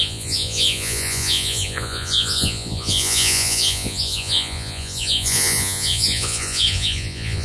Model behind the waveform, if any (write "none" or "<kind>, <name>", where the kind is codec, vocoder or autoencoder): vocoder, Vocos